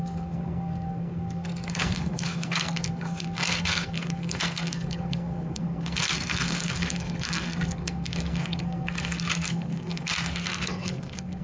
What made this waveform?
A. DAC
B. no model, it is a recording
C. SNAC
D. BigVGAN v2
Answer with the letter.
C